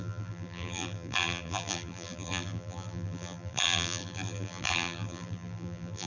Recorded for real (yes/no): no